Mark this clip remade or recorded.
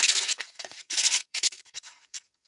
remade